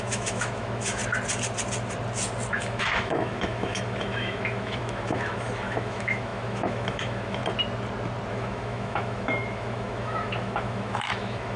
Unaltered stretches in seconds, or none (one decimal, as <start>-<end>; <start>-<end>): 1.0-2.5; 7.4-8.3